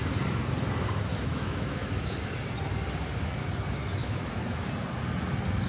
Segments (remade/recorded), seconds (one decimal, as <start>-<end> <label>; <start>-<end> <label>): 0.0-1.1 recorded; 1.1-2.3 remade; 2.3-4.0 recorded; 4.0-4.7 remade; 4.7-5.7 recorded